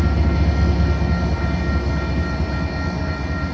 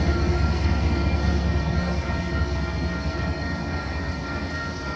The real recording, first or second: first